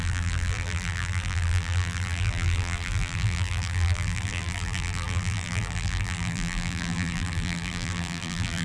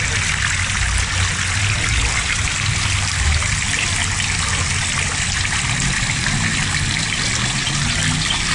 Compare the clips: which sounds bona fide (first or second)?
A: second